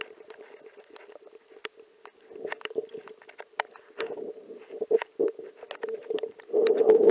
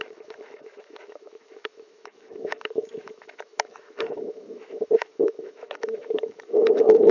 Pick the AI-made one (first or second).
second